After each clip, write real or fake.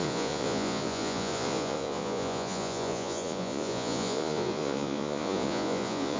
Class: fake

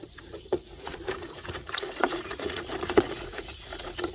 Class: fake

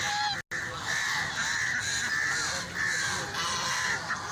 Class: real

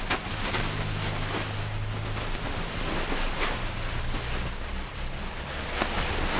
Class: real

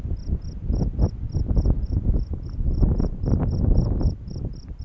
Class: real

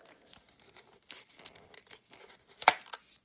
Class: real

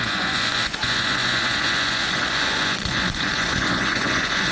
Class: fake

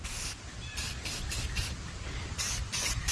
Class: fake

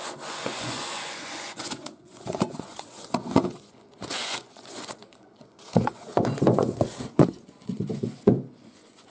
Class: fake